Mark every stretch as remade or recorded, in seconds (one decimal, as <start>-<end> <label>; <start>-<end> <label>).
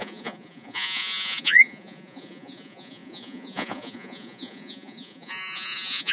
0.0-6.1 remade